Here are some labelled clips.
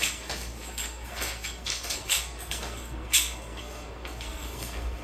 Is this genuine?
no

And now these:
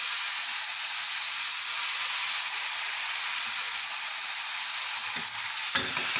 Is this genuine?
yes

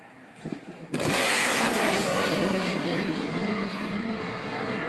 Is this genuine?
no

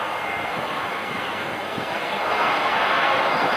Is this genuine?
no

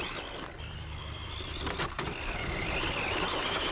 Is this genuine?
yes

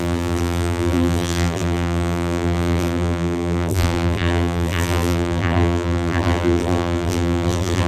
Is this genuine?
no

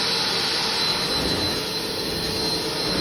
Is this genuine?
yes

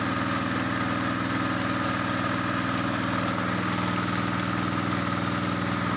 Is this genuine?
yes